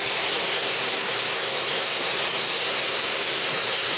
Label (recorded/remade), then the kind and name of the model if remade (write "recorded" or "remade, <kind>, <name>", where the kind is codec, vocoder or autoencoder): remade, codec, SNAC